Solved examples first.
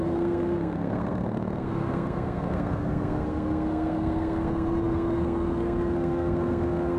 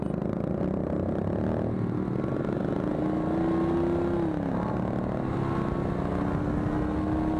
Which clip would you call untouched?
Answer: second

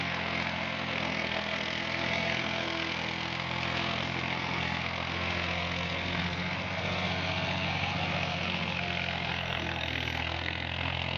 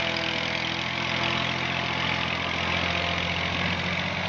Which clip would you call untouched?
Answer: second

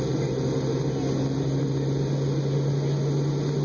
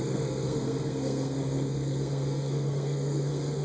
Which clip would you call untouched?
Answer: first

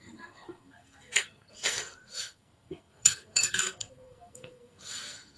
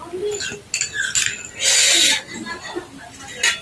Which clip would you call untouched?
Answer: second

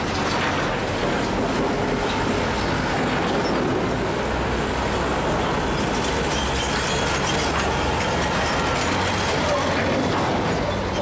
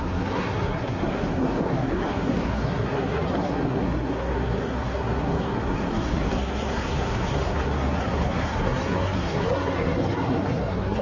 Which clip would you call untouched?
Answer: first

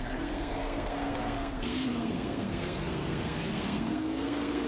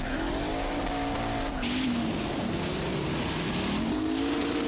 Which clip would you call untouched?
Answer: second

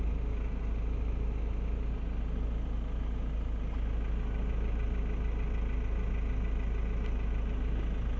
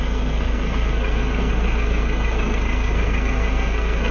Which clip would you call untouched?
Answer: first